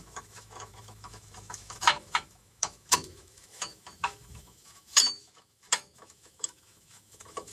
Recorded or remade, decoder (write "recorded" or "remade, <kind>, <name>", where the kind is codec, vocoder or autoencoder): remade, autoencoder, DAC-VAE